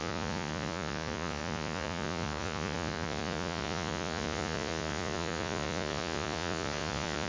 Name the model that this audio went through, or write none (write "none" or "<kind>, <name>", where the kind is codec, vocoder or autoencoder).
vocoder, Vocos